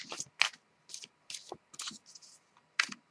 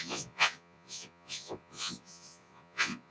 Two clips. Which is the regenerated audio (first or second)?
second